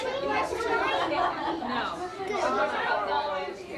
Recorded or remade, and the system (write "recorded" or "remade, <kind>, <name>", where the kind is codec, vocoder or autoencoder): recorded